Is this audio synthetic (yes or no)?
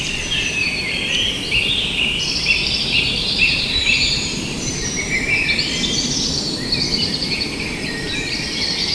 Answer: yes